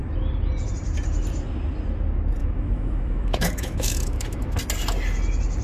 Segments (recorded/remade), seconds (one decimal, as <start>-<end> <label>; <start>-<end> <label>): 0.0-2.4 recorded; 2.4-4.6 remade; 4.6-5.6 recorded